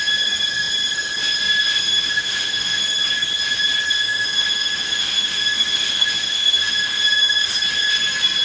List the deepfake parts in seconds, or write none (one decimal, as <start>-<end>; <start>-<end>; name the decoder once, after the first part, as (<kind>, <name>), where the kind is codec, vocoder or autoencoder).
1.7-3.0 (autoencoder, DAC-VAE); 4.0-7.6